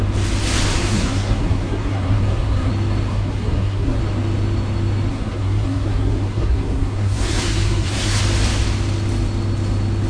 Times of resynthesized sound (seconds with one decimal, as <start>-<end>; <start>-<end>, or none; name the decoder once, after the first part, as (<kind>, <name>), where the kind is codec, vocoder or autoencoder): 0.7-2.7 (codec, SNAC); 3.1-4.0; 5.1-8.2